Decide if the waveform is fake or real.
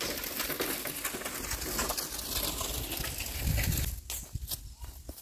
real